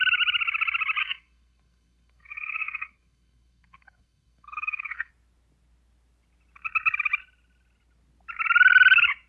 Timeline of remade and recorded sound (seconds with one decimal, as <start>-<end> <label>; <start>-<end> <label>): 0.0-1.0 recorded; 1.0-5.1 remade; 5.1-9.3 recorded